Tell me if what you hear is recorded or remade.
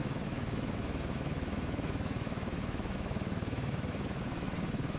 remade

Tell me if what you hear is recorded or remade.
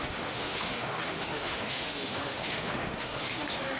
remade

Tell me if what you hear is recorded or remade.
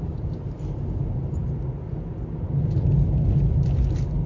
recorded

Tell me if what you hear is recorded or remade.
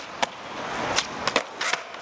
recorded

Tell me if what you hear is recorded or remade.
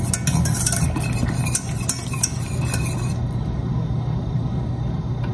recorded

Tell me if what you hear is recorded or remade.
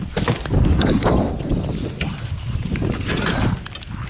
recorded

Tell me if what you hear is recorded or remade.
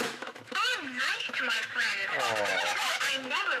remade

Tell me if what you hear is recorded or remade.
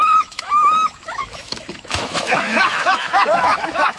remade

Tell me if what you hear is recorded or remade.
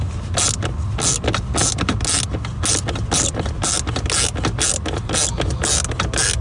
recorded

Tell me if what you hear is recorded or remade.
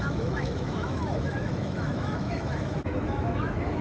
remade